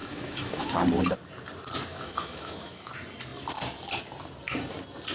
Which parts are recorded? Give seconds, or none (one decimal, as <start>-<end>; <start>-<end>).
0.7-1.9; 2.9-5.1